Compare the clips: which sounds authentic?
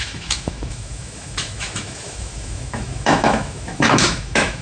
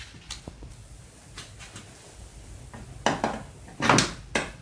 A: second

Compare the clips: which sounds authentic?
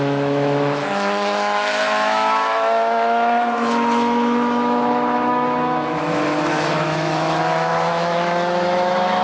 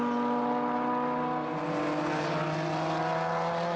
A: second